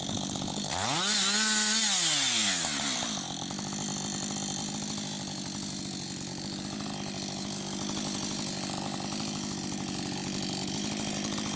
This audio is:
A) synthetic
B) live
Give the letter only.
B